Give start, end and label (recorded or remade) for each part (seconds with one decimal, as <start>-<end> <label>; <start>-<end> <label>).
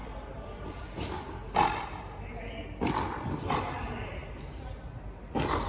0.0-3.4 remade; 3.4-5.7 recorded